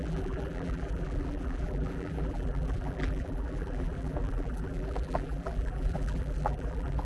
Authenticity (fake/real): fake